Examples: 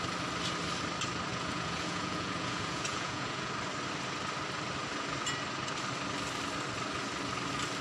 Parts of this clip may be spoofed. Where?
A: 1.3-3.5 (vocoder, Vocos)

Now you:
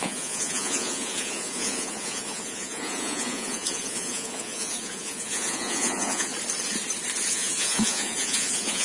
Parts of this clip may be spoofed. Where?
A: 0.0-6.3 (vocoder, Vocos); 7.3-8.8

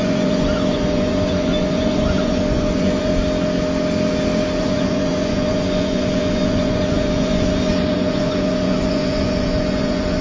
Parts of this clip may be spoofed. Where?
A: 0.0-3.1 (vocoder, Vocos); 4.6-10.2

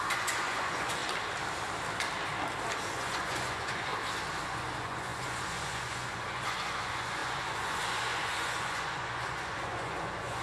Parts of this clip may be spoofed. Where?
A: 0.0-1.0 (vocoder, Vocos); 2.9-3.9; 4.4-10.4

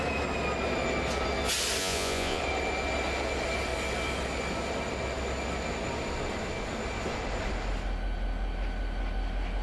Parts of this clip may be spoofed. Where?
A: 1.8-2.4 (vocoder, Vocos)

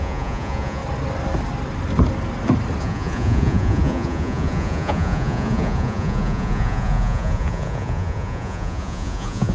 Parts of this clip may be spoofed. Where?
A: 0.0-0.8 (vocoder, Vocos); 2.8-9.5